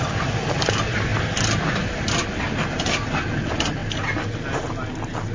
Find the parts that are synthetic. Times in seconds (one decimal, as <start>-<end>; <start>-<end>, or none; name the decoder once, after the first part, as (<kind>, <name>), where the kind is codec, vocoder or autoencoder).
none